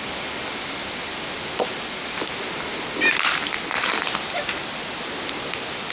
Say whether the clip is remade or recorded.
recorded